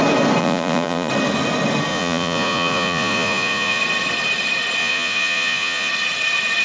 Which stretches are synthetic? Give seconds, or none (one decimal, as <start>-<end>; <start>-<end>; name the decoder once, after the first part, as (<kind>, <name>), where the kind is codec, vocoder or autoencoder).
0.4-1.1 (vocoder, Vocos); 1.9-3.8; 4.8-5.9